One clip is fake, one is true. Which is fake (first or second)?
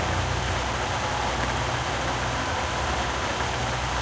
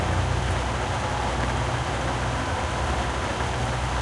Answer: first